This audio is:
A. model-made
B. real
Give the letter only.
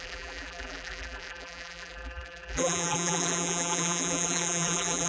A